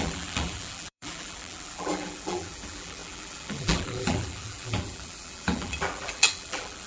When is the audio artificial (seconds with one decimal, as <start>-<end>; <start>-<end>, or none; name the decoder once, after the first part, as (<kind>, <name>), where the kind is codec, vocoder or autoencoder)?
0.0-6.9 (vocoder, BigVGAN v2)